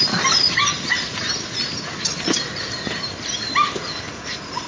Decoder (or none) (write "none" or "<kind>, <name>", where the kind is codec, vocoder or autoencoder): none